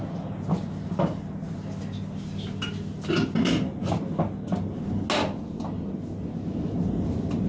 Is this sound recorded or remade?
recorded